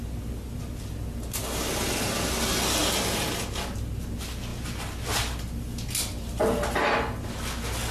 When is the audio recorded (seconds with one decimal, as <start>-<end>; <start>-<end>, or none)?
0.0-7.9